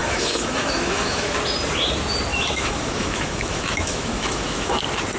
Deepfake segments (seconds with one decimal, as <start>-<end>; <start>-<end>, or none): 0.0-1.3; 2.3-4.8